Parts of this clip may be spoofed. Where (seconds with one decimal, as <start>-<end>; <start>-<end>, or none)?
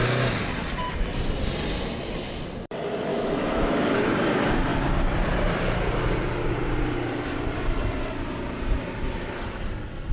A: 3.1-3.8